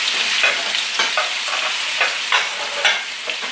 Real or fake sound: real